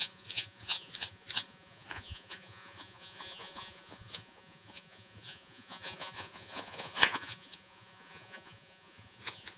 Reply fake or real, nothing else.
fake